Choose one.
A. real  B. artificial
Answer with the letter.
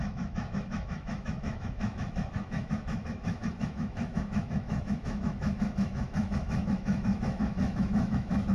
B